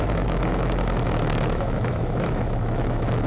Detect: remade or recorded remade